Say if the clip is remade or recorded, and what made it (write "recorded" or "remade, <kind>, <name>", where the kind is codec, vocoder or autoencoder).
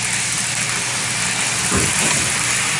recorded